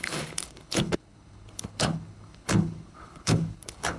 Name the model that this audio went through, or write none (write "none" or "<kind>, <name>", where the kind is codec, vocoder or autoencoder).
codec, HILCodec